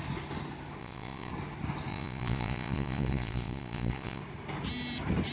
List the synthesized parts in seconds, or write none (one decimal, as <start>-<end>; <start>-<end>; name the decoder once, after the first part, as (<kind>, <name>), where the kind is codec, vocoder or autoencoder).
0.8-1.3 (vocoder, Vocos); 1.9-4.2